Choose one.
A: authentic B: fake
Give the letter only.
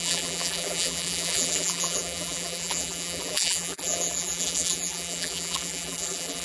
B